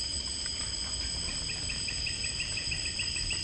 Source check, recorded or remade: remade